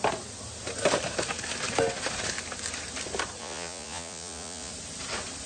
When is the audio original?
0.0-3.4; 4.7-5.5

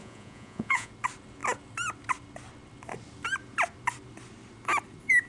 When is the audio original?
0.9-5.3

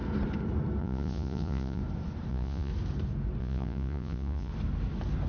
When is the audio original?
0.0-0.8; 1.8-2.3; 2.7-3.4; 4.5-5.3

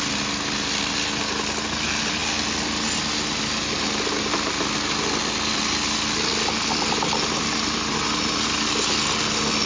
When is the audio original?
0.0-9.7

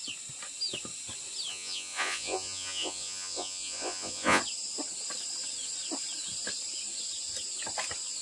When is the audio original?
0.0-1.5; 4.4-8.2

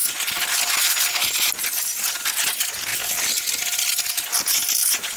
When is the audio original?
0.0-5.2

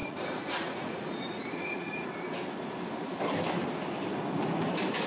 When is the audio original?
2.1-5.1